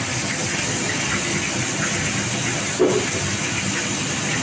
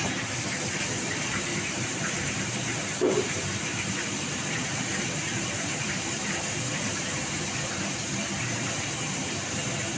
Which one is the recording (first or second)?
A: first